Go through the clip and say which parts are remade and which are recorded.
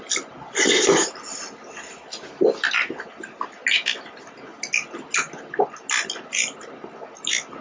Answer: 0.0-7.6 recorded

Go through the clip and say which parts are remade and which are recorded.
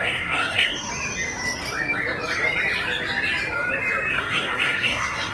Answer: 0.0-0.9 remade; 0.9-4.1 recorded; 4.1-5.3 remade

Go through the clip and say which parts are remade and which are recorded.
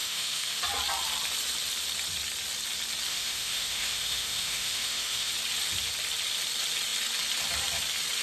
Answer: 0.0-0.6 remade; 0.6-3.1 recorded; 3.1-5.3 remade; 5.3-8.2 recorded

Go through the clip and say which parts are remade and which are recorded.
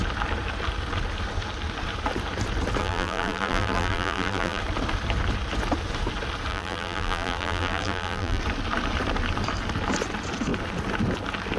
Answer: 0.0-2.8 recorded; 2.8-4.6 remade; 4.6-6.5 recorded; 6.5-8.4 remade; 8.4-11.6 recorded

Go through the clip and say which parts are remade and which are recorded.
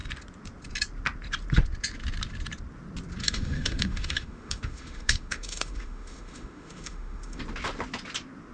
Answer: 0.0-3.2 recorded; 3.2-7.4 remade; 7.4-8.5 recorded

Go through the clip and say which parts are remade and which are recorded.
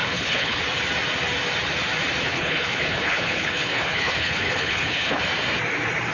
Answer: 0.0-0.6 remade; 0.6-2.2 recorded; 2.2-5.2 remade; 5.2-6.1 recorded